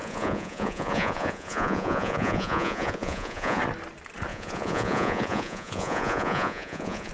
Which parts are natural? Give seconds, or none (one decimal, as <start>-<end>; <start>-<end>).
3.6-4.3